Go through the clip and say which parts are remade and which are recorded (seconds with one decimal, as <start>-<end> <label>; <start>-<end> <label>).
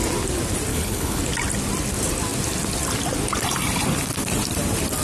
0.0-0.7 recorded; 0.7-1.2 remade; 1.2-5.0 recorded